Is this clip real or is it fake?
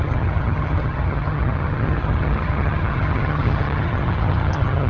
fake